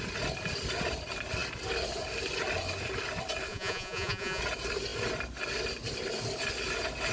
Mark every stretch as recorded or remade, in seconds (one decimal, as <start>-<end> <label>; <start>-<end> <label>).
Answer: 0.0-3.5 recorded; 3.5-4.4 remade; 4.4-7.1 recorded